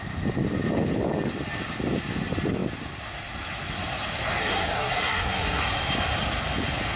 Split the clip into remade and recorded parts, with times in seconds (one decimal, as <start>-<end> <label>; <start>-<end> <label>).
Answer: 0.0-4.4 recorded; 4.4-5.6 remade; 5.6-7.0 recorded